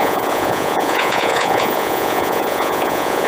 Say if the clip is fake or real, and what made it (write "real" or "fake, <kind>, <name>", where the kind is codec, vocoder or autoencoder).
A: fake, vocoder, Vocos